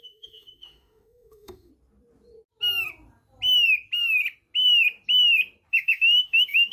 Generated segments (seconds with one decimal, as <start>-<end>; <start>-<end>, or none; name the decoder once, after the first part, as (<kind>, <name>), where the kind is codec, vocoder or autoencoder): 0.0-1.7 (autoencoder, DAC-VAE); 5.7-6.7